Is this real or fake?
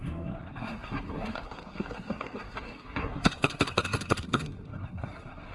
fake